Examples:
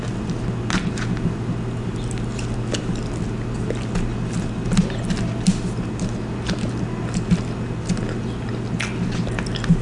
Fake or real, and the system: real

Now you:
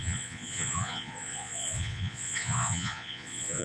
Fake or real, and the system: fake, vocoder, Vocos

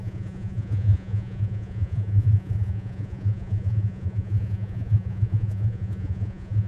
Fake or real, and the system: fake, vocoder, Vocos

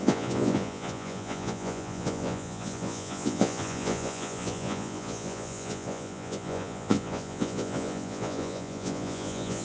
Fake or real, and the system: fake, vocoder, Vocos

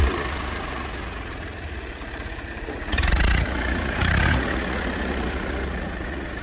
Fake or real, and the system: fake, vocoder, Vocos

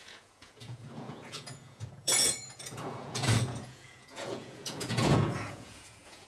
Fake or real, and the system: fake, vocoder, Vocos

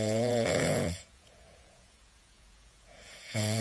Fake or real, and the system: fake, vocoder, Vocos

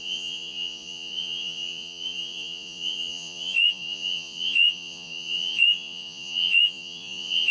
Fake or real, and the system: fake, vocoder, Vocos